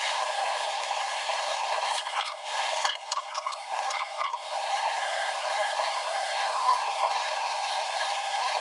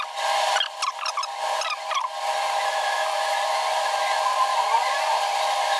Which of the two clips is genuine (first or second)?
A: second